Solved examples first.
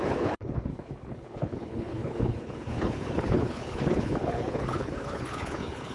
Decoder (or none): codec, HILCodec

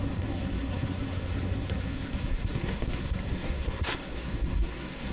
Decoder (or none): codec, SNAC